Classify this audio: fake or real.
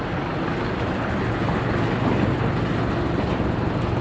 real